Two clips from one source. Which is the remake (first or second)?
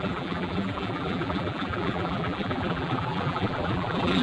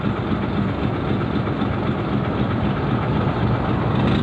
first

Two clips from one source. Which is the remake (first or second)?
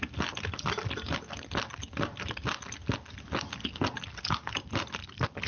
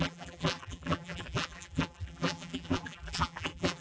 second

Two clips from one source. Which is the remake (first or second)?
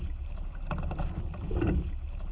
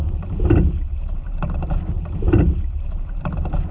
second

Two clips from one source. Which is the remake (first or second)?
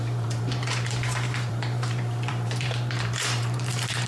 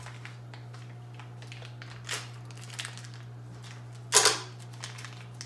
first